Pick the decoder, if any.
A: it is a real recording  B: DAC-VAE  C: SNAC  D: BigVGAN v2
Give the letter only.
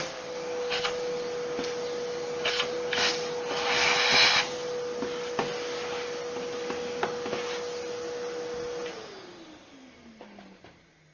A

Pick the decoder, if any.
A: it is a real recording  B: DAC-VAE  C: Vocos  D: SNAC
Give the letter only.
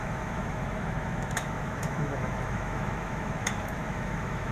B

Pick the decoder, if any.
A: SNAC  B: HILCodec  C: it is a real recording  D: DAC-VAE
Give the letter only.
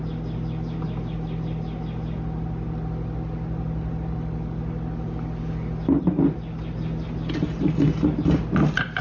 C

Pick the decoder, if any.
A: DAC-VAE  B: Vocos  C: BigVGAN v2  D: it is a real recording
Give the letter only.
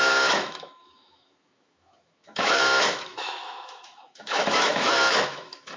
A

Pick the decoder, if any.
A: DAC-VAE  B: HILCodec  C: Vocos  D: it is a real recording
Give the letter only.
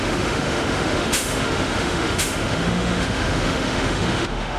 A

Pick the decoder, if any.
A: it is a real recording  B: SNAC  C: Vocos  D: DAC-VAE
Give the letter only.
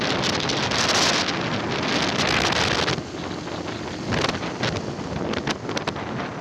A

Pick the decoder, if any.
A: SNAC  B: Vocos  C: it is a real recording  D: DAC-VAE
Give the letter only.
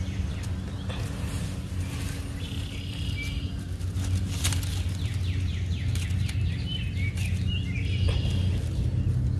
C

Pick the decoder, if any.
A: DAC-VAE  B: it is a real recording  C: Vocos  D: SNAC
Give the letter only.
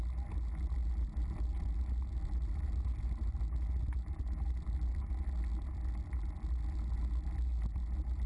B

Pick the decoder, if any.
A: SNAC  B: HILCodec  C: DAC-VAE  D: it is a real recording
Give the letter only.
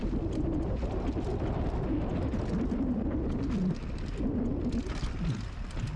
D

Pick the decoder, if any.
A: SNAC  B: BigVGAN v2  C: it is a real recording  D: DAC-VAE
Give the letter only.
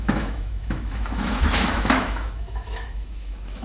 D